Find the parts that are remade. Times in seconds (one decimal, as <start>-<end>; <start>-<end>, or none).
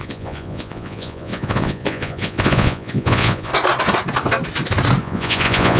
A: 0.0-3.5; 5.0-5.8